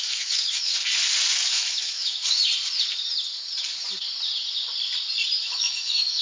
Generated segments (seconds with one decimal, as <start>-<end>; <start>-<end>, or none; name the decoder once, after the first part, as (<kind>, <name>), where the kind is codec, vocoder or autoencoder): 0.0-0.7 (autoencoder, DAC-VAE); 1.3-2.4; 5.4-6.2